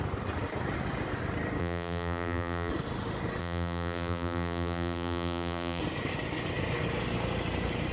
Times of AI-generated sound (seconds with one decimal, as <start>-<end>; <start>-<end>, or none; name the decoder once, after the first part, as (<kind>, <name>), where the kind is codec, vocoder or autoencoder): 1.6-2.7 (vocoder, BigVGAN v2); 3.4-5.8